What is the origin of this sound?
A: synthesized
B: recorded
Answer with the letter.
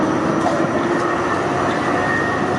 B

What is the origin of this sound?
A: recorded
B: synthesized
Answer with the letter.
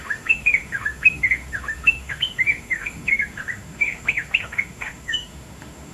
B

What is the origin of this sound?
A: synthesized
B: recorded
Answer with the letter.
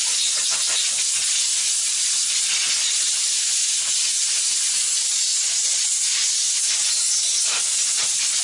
B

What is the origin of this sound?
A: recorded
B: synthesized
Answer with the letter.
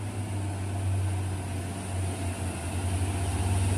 A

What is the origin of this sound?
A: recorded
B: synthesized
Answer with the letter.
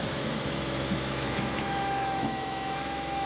B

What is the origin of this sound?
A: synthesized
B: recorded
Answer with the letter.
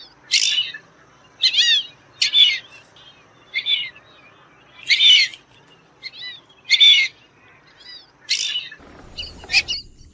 B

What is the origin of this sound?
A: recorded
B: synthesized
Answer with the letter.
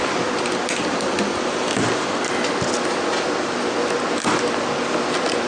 A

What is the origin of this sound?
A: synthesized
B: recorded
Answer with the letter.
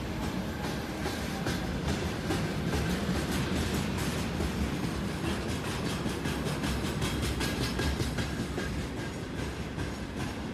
B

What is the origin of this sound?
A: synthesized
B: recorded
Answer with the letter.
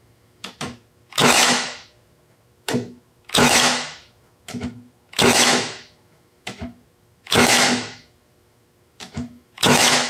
A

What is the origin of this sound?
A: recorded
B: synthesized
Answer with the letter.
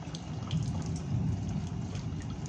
A